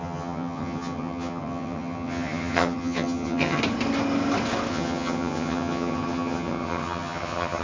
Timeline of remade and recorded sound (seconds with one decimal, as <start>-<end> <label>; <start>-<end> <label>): 0.0-3.6 remade; 3.6-4.7 recorded; 4.7-7.6 remade